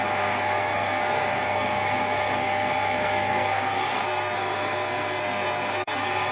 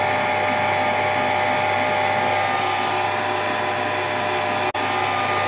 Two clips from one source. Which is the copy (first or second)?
first